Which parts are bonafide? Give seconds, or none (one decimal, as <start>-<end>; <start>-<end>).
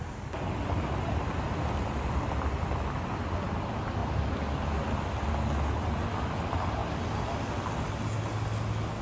0.0-9.0